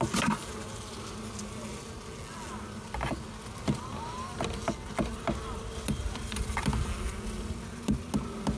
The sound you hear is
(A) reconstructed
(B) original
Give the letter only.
B